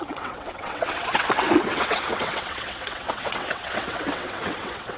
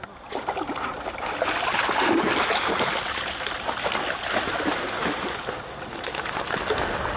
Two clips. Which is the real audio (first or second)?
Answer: second